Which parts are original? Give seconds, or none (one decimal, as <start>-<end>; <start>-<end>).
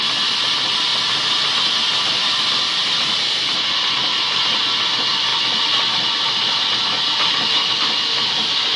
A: 0.0-8.8